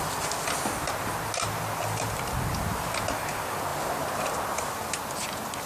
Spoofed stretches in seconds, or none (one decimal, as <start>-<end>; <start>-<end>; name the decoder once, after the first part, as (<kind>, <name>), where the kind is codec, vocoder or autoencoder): none